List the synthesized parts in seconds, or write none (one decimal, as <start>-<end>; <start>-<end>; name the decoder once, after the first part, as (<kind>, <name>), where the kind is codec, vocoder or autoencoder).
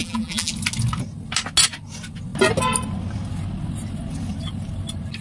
0.0-0.5 (vocoder, BigVGAN v2)